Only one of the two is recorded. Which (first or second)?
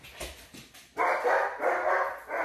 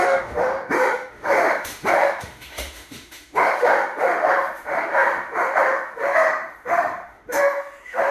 first